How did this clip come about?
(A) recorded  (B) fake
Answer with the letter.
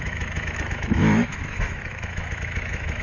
B